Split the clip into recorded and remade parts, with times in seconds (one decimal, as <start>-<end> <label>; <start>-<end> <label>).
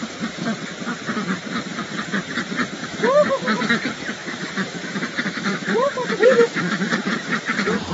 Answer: 0.0-2.8 recorded; 2.8-3.6 remade; 3.6-4.2 recorded; 4.2-7.1 remade; 7.1-7.9 recorded